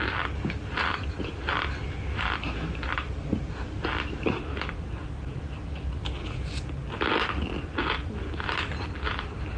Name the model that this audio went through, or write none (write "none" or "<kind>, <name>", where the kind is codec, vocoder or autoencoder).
none